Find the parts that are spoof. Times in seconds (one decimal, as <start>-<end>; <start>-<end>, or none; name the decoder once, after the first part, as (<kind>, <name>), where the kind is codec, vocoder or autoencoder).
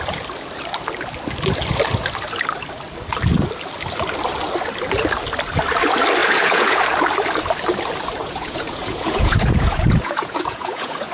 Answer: 6.2-6.8 (vocoder, Vocos); 8.2-11.1